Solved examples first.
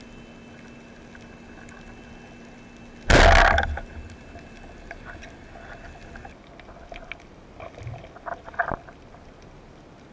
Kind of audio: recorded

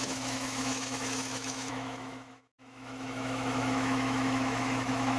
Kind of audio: remade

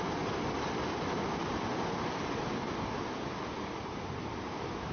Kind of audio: recorded